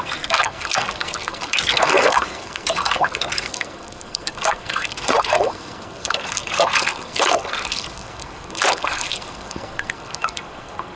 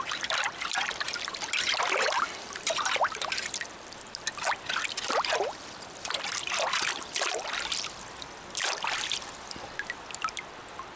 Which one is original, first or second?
second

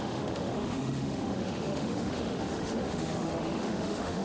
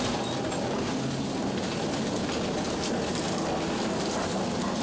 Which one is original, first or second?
second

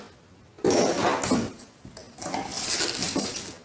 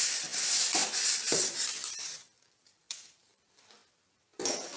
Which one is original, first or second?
first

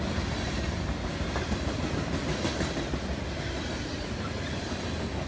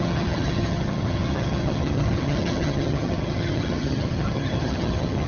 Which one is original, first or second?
first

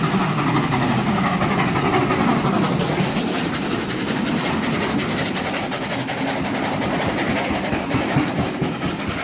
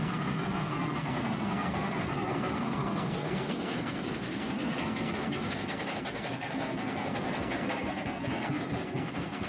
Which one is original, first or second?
first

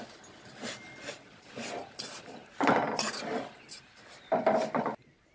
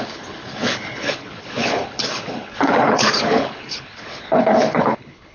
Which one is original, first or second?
first